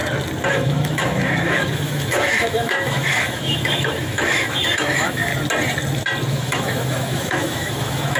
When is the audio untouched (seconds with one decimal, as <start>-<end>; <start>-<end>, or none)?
0.0-0.5; 5.3-6.3